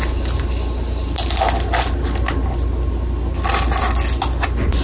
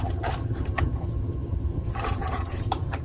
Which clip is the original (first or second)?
first